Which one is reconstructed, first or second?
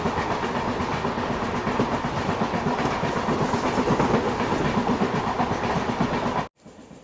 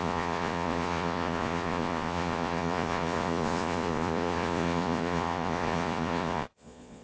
second